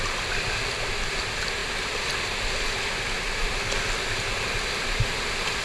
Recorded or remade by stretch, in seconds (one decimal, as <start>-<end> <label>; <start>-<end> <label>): 0.0-5.6 recorded